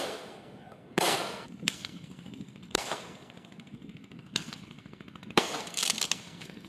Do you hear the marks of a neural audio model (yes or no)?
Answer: yes